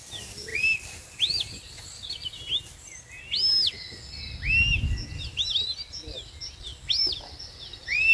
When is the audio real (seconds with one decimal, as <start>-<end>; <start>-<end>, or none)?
0.0-8.1